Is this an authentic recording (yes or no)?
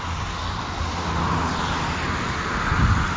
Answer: yes